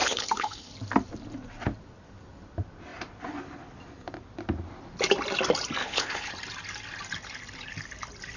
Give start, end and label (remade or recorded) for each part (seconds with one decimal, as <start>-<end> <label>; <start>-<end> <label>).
0.0-0.7 remade; 0.7-5.8 recorded; 5.8-6.3 remade; 6.3-8.4 recorded